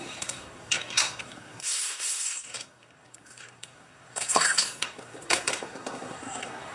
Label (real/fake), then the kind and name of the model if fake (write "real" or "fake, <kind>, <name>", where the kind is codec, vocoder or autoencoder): fake, codec, SNAC